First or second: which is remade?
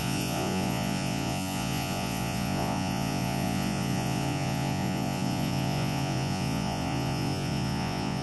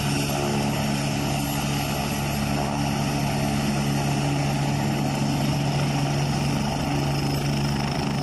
first